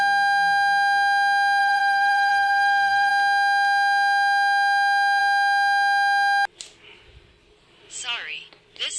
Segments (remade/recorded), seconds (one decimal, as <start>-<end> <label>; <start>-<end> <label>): 0.0-1.6 recorded; 1.6-3.1 remade; 3.1-9.0 recorded